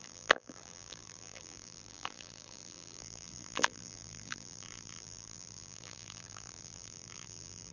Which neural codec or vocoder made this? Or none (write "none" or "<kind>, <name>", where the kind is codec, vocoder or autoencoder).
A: vocoder, BigVGAN v2